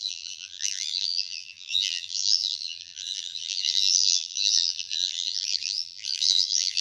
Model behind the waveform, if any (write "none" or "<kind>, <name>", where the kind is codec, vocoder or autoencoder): vocoder, BigVGAN v2